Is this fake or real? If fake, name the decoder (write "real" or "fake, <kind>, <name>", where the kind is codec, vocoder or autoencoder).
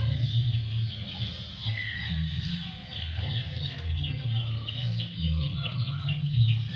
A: fake, codec, SNAC